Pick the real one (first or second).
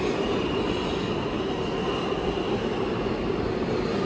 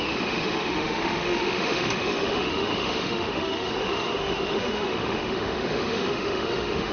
first